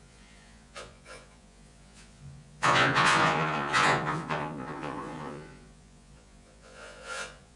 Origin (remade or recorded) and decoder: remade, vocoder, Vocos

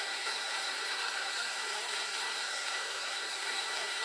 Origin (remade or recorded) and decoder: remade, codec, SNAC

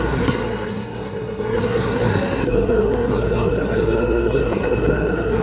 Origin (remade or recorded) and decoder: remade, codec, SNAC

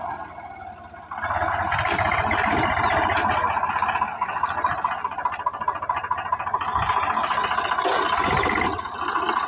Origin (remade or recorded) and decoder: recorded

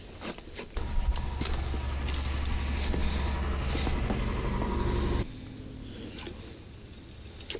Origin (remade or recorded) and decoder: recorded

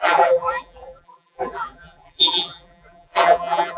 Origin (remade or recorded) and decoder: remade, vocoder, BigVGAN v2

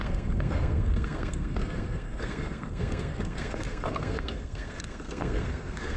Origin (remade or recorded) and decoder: remade, codec, SNAC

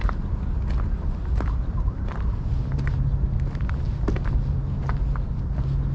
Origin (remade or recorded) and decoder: recorded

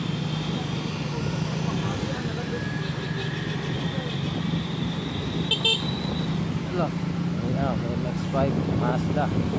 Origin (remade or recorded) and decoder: recorded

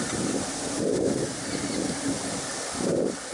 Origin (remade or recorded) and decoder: recorded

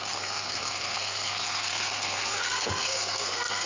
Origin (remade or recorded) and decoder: remade, codec, SNAC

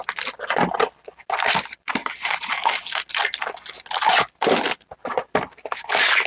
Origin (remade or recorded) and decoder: recorded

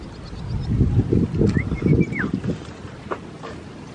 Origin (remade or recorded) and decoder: recorded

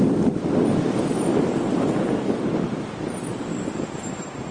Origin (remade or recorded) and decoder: recorded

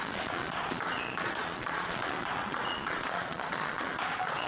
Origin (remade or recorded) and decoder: remade, vocoder, Vocos